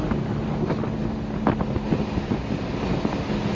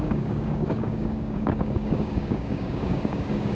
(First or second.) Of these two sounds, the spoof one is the second